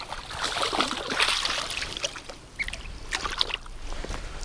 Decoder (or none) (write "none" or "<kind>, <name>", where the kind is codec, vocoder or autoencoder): none